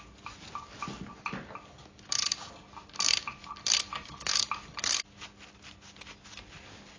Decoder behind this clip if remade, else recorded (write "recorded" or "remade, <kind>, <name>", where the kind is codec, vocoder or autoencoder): recorded